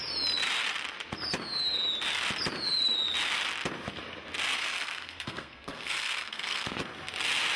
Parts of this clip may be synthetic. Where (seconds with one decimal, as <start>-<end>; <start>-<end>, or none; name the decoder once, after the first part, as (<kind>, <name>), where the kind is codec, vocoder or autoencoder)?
4.6-6.8 (codec, SNAC)

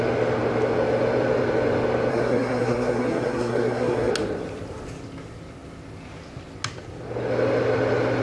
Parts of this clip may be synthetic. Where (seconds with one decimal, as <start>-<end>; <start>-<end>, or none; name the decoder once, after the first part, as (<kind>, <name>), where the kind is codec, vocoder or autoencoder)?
2.1-4.1 (codec, SNAC)